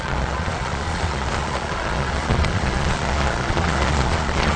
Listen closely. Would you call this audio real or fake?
fake